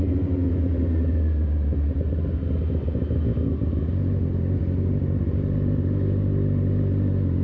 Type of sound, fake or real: real